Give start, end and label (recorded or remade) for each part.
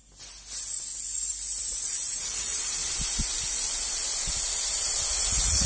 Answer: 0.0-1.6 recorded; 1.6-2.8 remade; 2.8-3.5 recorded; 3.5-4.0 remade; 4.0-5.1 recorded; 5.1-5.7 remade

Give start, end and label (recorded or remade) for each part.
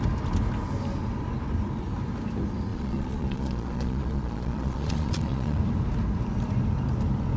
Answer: 0.0-2.7 recorded; 2.7-5.6 remade; 5.6-7.4 recorded